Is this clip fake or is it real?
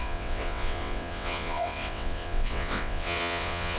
fake